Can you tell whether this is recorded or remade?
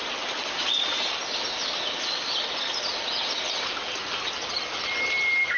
recorded